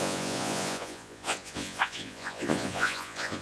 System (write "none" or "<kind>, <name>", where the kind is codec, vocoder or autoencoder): vocoder, Vocos